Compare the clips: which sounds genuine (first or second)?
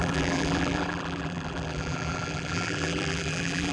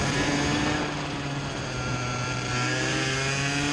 second